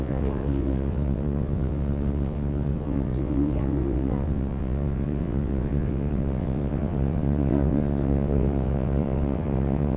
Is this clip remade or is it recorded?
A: remade